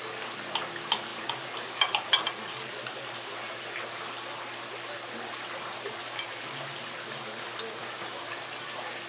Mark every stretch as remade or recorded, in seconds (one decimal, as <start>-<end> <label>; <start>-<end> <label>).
0.0-7.8 recorded; 7.8-8.3 remade; 8.3-9.1 recorded